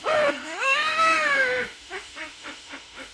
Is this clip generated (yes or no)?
yes